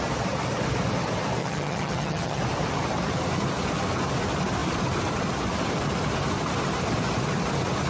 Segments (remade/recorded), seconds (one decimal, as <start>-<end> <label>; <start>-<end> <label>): 0.0-1.4 recorded; 1.4-2.4 remade; 2.4-7.9 recorded